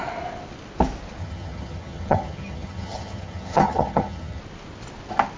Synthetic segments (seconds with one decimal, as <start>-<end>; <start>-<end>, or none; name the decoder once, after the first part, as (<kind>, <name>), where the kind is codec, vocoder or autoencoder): 1.2-4.4 (vocoder, HiFi-GAN)